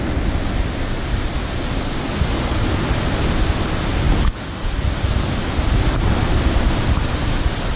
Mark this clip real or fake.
real